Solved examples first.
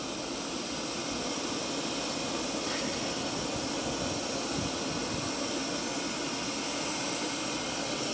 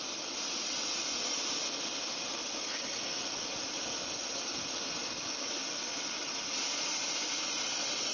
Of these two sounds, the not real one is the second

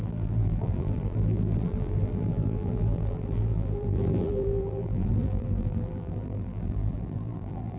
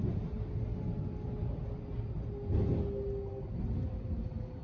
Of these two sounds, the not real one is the first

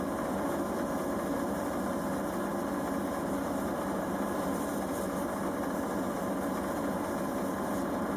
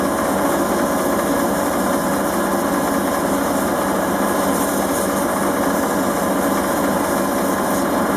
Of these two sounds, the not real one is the first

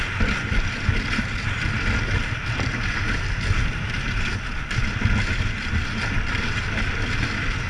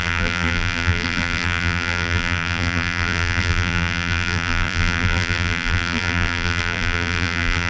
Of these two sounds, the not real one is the second